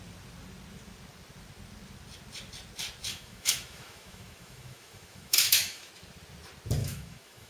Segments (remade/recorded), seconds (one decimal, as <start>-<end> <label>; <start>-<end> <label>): 0.0-3.1 recorded; 3.1-5.9 remade; 5.9-6.8 recorded; 6.8-7.5 remade